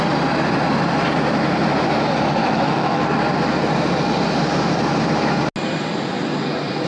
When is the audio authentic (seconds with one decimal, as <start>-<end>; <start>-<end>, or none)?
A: 0.0-2.4; 3.0-6.9